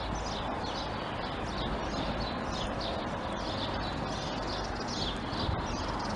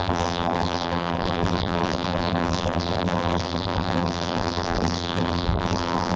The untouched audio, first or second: first